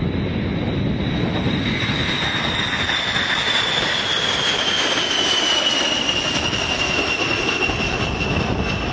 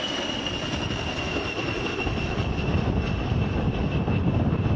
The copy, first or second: second